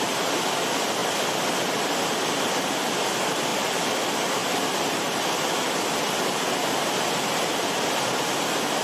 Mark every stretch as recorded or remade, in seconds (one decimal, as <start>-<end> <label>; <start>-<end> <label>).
0.0-3.5 recorded; 3.5-4.0 remade; 4.0-4.4 recorded; 4.4-6.2 remade; 6.2-8.8 recorded